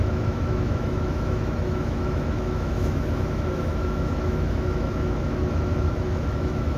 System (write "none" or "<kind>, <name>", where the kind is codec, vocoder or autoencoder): autoencoder, DAC-VAE